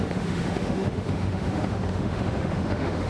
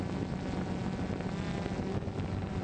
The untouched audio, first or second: second